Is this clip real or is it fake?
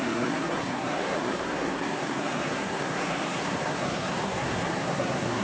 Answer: fake